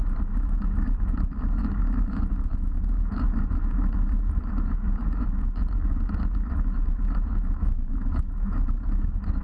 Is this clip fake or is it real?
fake